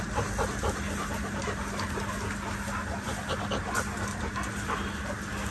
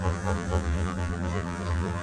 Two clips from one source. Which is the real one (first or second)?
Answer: first